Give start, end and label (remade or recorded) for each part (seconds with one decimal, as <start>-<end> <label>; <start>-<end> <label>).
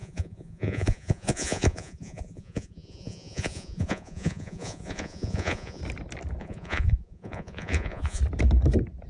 0.0-5.8 remade; 5.8-6.4 recorded; 6.4-8.2 remade; 8.2-9.1 recorded